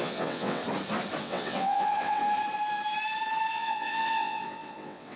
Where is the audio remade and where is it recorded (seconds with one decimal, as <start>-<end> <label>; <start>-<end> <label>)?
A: 0.0-0.6 remade; 0.6-1.2 recorded; 1.2-2.2 remade; 2.2-3.5 recorded; 3.5-5.2 remade